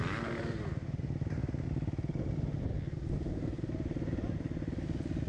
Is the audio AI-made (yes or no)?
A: no